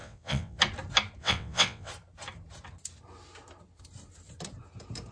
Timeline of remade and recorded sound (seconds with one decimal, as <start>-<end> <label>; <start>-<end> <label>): 0.0-0.6 remade; 0.6-1.2 recorded; 1.2-1.9 remade; 1.9-5.1 recorded